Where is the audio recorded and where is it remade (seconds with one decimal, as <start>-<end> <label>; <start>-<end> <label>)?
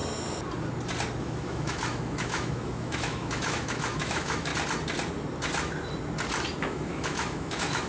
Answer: 0.0-1.2 recorded; 1.2-4.5 remade; 4.5-6.6 recorded; 6.6-7.9 remade